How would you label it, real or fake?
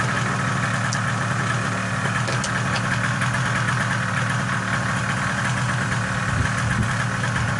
real